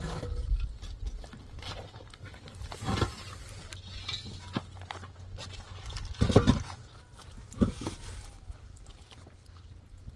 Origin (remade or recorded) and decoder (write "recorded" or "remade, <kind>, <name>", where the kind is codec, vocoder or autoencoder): recorded